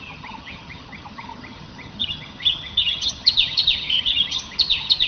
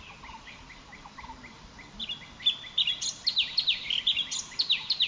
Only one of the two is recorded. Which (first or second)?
second